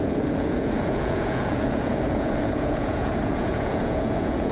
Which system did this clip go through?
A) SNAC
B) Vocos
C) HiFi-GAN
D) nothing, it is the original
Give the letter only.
B